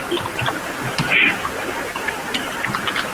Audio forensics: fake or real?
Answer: real